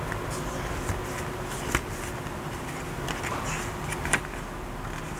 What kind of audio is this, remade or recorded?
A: recorded